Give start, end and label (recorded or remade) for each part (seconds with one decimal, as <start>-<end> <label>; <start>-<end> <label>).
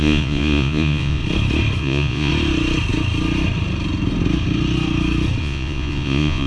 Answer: 0.0-1.2 remade; 1.2-1.8 recorded; 1.8-2.3 remade; 2.3-5.4 recorded; 5.4-6.5 remade